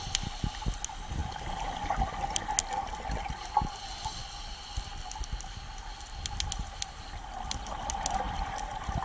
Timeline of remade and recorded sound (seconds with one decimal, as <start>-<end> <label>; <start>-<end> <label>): 0.0-9.0 recorded

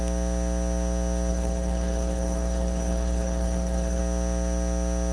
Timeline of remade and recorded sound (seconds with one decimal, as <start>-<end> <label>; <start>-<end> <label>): 0.0-1.3 recorded; 1.3-4.0 remade; 4.0-5.1 recorded

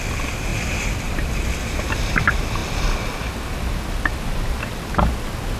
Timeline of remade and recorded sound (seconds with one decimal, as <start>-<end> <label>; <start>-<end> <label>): 0.0-0.5 recorded; 0.5-1.6 remade; 1.6-5.6 recorded

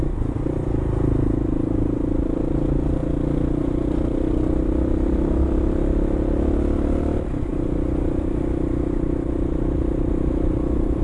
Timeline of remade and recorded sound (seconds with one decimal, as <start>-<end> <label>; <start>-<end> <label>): 0.0-11.0 recorded

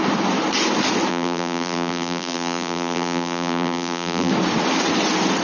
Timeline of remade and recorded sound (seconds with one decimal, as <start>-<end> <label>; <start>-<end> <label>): 0.0-1.1 recorded; 1.1-4.3 remade; 4.3-5.4 recorded